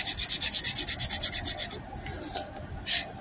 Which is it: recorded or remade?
recorded